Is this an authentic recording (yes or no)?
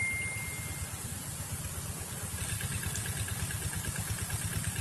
yes